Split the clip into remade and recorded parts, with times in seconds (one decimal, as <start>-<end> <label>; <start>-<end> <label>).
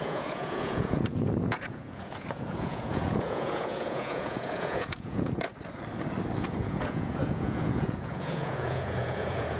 0.0-5.5 remade; 5.5-6.4 recorded; 6.4-9.6 remade